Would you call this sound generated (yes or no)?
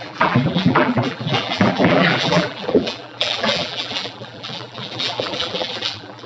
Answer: yes